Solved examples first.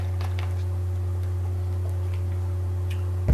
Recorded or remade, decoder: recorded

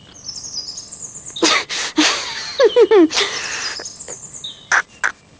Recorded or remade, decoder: recorded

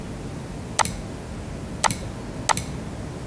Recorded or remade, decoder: recorded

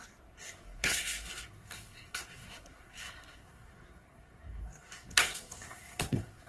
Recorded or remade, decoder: remade, codec, SNAC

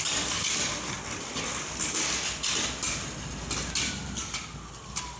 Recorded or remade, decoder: recorded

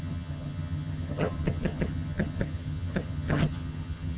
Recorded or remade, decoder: remade, vocoder, HiFi-GAN